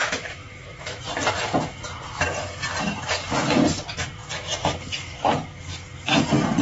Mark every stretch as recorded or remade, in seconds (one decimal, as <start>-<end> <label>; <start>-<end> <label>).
0.0-1.0 remade; 1.0-6.6 recorded